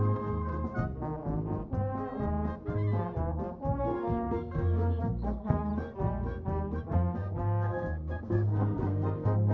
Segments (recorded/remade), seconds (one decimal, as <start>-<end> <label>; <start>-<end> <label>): 0.0-0.5 remade; 0.5-3.8 recorded; 3.8-5.7 remade; 5.7-6.8 recorded; 6.8-9.5 remade